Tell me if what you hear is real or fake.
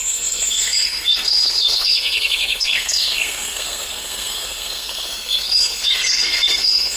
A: fake